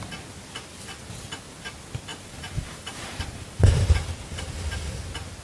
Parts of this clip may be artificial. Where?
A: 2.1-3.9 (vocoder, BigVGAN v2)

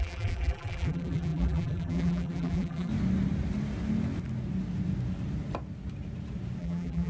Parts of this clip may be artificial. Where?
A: 0.0-2.9 (vocoder, BigVGAN v2); 6.6-7.1

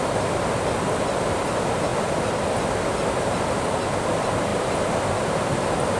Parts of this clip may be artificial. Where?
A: 4.5-5.1 (vocoder, BigVGAN v2)

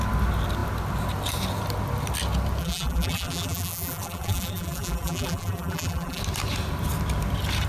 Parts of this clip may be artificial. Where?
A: 2.6-6.2 (vocoder, BigVGAN v2)

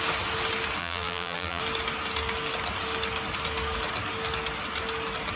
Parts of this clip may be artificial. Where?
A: 0.8-1.6 (vocoder, BigVGAN v2)

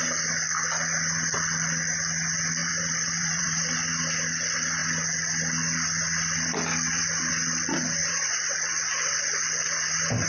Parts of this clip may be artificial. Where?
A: 2.6-3.6 (vocoder, BigVGAN v2); 8.0-8.7

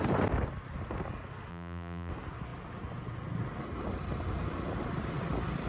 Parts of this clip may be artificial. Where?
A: 1.5-2.1 (vocoder, BigVGAN v2)

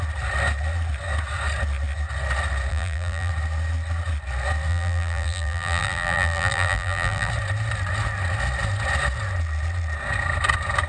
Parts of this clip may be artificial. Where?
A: 2.7-3.3 (vocoder, BigVGAN v2); 4.7-7.3